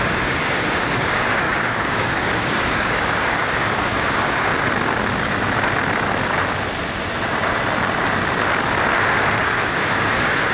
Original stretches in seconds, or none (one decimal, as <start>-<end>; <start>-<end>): 4.5-9.4